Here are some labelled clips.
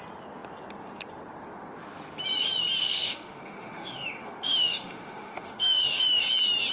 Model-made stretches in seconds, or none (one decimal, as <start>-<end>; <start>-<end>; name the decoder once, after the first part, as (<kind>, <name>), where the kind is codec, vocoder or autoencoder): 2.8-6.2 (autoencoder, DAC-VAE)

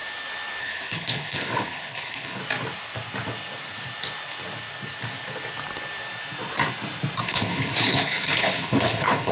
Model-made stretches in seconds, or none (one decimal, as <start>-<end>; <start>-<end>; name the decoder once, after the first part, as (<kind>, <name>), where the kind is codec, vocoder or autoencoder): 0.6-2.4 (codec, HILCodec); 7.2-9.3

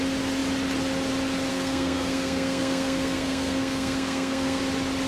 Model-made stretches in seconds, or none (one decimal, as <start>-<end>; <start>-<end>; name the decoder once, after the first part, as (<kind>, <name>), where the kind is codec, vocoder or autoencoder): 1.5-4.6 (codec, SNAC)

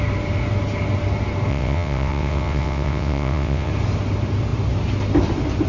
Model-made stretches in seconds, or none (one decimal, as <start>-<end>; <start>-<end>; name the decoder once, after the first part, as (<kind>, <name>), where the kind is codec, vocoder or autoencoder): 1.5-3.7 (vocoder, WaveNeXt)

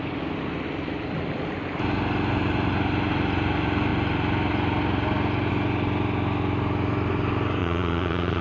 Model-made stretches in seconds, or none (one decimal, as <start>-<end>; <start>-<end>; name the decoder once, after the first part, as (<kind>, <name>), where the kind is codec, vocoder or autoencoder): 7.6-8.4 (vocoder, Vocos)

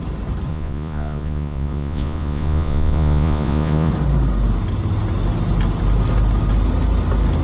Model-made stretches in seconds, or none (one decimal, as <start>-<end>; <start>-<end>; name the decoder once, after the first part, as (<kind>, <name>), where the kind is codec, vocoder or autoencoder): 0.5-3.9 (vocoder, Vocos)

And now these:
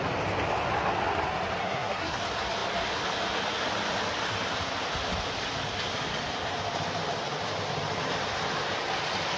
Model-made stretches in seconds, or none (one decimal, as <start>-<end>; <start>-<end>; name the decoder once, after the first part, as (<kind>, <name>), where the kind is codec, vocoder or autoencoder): 1.6-2.2 (codec, SNAC)